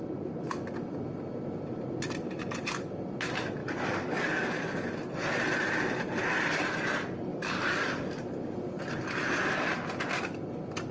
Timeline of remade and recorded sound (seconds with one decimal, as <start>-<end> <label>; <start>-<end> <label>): 0.0-3.6 recorded; 3.6-4.3 remade; 4.3-7.3 recorded; 7.3-8.2 remade; 8.2-10.9 recorded